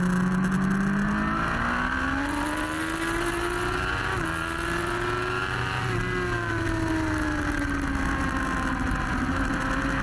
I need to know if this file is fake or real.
real